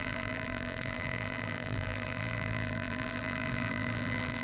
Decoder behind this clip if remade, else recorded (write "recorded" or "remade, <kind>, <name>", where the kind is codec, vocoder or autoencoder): remade, vocoder, BigVGAN v2